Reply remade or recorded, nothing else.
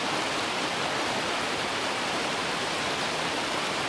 remade